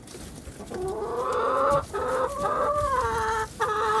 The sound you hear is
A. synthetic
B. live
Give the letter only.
B